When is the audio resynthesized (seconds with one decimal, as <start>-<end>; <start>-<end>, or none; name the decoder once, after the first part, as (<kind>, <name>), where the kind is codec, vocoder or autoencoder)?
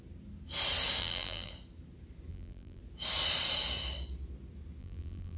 1.0-1.5 (vocoder, BigVGAN v2); 2.3-2.8; 4.8-5.4